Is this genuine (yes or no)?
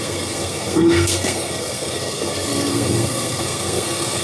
no